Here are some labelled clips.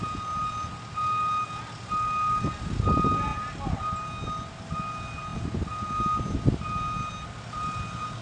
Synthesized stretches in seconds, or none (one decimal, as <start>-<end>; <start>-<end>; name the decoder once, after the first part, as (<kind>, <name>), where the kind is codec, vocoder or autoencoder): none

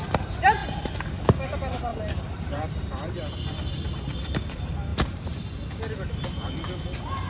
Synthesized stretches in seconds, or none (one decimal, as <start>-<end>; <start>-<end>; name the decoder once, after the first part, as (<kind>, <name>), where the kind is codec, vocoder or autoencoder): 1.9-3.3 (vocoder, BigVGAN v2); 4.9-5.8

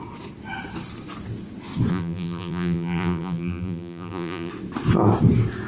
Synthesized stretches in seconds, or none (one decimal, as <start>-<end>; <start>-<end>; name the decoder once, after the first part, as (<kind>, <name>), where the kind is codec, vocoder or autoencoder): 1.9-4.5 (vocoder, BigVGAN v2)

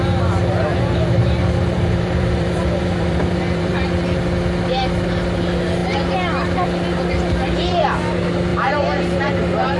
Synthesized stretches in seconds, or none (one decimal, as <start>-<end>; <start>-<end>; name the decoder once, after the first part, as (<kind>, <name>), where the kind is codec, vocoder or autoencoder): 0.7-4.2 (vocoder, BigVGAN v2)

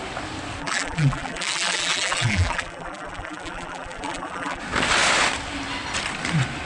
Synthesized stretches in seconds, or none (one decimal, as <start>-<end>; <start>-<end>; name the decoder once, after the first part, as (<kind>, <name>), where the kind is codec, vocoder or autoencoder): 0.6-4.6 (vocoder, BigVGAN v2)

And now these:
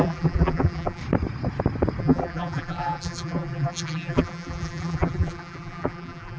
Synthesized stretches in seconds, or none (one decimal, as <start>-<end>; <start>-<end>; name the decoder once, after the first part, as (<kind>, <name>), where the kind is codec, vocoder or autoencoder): 0.0-1.0 (vocoder, BigVGAN v2); 2.0-6.4